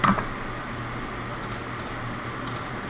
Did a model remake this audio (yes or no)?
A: no